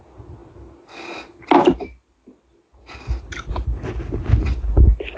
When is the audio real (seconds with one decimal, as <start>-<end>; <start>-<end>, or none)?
0.0-5.2